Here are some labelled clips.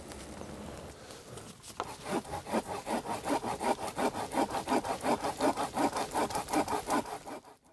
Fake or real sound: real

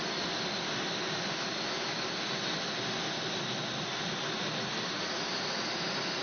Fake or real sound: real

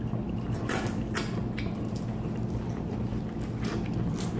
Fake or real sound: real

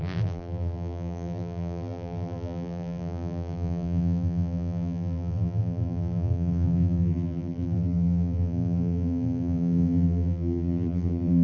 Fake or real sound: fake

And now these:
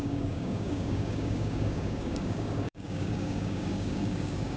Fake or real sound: fake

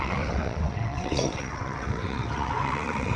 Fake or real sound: fake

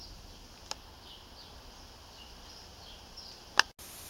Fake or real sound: real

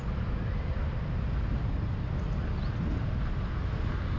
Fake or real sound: real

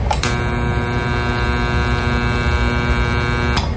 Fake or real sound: real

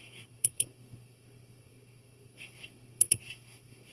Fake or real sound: fake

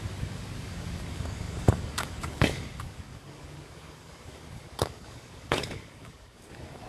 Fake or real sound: fake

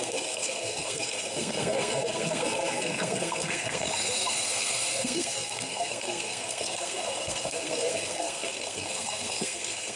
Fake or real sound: fake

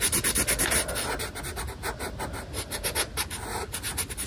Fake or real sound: real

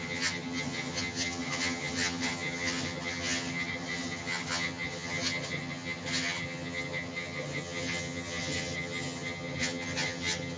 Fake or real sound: fake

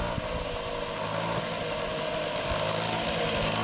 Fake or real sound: real